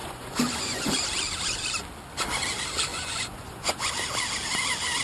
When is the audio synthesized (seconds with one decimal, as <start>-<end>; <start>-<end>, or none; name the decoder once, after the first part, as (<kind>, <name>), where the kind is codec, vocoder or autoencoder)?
0.0-0.9 (vocoder, Vocos); 2.9-3.9